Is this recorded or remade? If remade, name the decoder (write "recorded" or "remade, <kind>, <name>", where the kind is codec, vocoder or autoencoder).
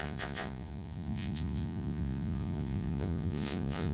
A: remade, vocoder, Vocos